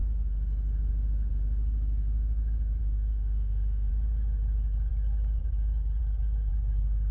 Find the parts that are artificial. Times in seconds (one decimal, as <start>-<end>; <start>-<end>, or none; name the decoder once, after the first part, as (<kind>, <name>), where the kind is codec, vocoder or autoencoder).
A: 2.8-3.9 (autoencoder, DAC-VAE)